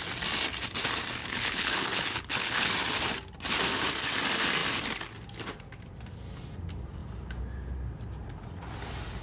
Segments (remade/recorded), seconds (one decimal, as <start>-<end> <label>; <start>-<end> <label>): 0.0-1.2 recorded; 1.2-2.7 remade; 2.7-9.2 recorded